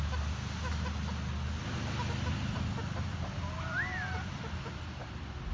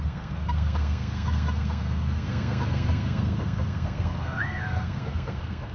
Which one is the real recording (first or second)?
first